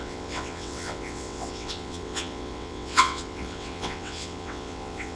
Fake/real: fake